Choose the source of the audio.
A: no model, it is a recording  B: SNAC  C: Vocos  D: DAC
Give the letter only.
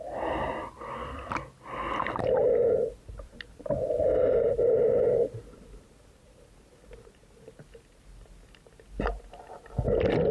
A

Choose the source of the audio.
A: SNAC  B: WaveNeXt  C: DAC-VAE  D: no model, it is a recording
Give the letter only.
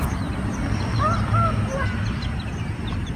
D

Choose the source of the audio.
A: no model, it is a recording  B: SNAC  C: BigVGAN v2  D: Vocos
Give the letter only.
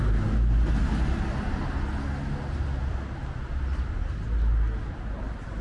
A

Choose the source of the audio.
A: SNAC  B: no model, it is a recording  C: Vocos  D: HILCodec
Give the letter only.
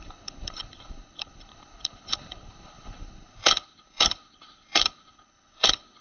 D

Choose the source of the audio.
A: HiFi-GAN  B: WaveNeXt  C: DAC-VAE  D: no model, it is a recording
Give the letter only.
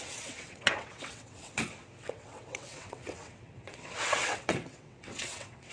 B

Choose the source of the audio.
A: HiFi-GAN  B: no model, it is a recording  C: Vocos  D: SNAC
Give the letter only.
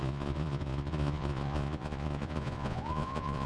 C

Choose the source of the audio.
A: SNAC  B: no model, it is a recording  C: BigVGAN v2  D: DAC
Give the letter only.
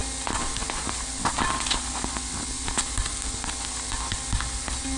B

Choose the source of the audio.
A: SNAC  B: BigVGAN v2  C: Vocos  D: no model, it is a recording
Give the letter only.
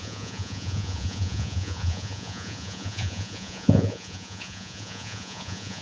C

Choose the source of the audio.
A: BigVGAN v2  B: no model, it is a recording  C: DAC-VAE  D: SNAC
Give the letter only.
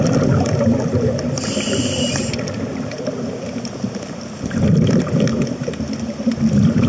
B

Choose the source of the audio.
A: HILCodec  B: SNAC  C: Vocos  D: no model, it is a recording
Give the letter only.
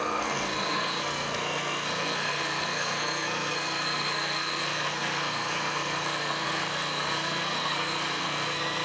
B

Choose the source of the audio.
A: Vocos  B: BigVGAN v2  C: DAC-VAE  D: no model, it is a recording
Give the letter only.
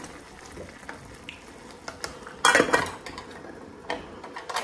D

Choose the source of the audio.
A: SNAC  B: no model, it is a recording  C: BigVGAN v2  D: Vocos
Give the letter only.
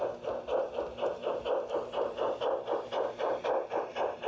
B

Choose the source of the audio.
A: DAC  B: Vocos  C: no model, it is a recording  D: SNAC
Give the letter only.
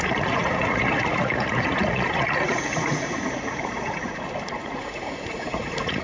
B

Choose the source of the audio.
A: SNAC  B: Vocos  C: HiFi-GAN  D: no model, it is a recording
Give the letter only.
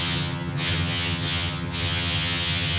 C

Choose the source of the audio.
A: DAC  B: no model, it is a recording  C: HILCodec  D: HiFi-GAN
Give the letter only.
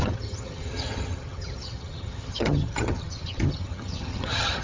D